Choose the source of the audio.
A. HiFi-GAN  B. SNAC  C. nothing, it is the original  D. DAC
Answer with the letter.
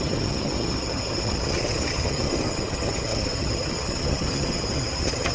A